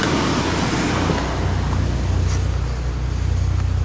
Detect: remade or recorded recorded